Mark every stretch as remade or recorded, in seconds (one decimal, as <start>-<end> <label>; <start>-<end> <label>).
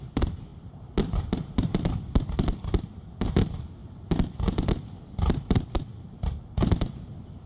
0.0-0.5 recorded; 0.5-1.3 remade; 1.3-5.9 recorded; 5.9-7.5 remade